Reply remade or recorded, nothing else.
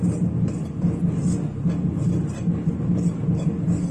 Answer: recorded